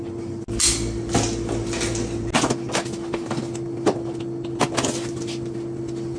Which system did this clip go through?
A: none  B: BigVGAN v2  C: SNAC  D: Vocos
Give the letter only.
A